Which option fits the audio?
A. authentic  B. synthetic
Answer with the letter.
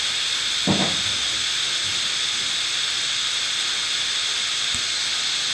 A